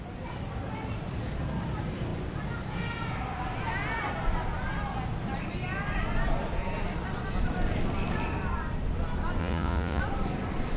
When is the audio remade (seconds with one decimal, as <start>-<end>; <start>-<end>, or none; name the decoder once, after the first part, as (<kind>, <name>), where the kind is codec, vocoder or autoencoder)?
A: 9.4-10.0 (vocoder, Vocos)